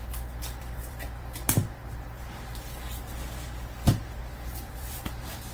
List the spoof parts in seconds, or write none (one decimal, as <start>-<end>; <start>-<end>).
0.6-1.6; 4.2-5.5